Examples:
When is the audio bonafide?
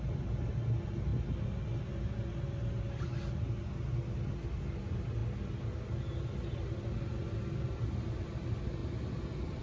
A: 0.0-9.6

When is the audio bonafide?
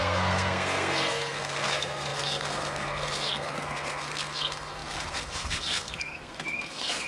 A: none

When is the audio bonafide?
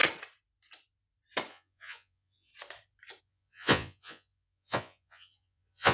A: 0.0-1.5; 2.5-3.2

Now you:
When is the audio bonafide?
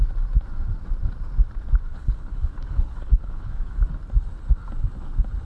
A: 0.0-1.9; 3.9-5.4